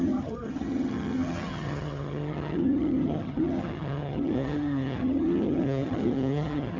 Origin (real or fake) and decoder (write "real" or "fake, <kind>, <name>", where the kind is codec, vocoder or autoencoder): fake, vocoder, HiFi-GAN